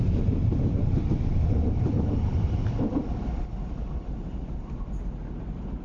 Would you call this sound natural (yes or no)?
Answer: yes